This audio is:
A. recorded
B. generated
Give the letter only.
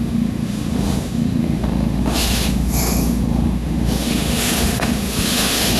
B